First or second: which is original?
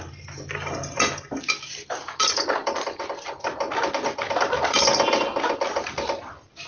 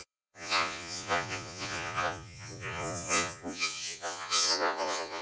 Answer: first